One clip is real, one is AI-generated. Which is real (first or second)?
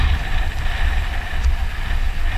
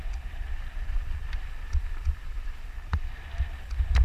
first